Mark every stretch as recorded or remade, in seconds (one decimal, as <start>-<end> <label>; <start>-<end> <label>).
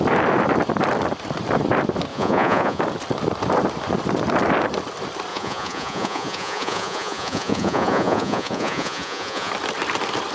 0.0-2.1 recorded; 2.1-2.8 remade; 2.8-5.3 recorded; 5.3-9.5 remade; 9.5-10.3 recorded